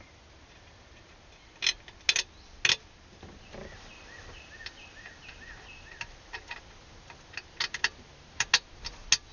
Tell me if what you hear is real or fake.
real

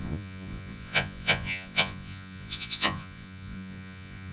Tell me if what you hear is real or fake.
fake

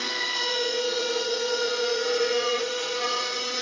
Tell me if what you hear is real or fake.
fake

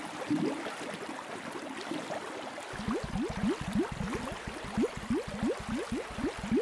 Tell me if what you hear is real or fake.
real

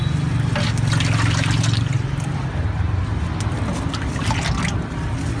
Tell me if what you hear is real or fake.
real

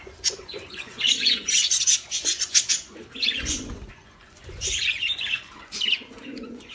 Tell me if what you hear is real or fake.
fake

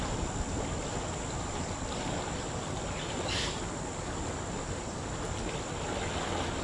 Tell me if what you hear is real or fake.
real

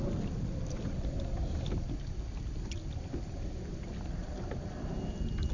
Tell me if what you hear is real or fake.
real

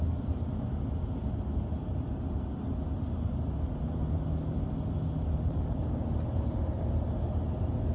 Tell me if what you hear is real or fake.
real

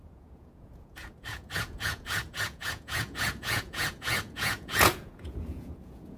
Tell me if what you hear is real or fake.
fake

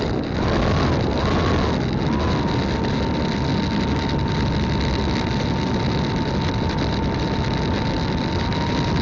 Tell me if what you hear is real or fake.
real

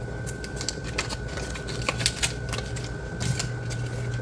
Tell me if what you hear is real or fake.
real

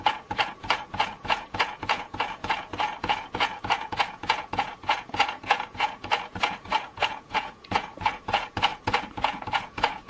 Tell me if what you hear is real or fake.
fake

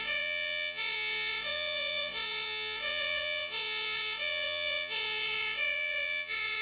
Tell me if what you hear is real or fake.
fake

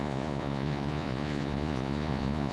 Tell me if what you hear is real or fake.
fake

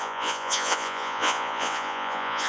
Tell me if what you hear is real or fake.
fake